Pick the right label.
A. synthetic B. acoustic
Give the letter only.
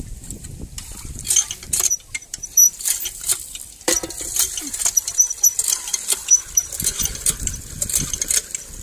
A